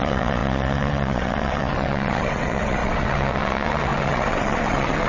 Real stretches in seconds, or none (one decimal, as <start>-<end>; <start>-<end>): none